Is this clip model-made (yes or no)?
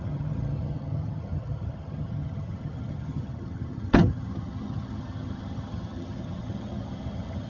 yes